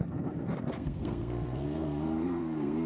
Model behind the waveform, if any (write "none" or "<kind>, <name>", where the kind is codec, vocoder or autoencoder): codec, SNAC